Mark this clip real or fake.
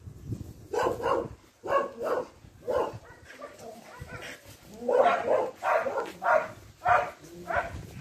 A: real